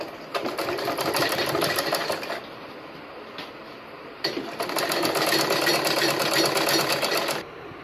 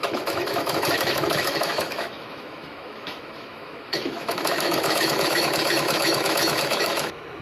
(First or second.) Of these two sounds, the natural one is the first